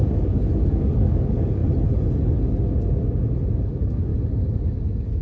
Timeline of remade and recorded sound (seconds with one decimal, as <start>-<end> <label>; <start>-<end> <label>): 0.0-1.6 remade; 1.6-3.6 recorded; 3.6-4.1 remade; 4.1-4.7 recorded; 4.7-5.2 remade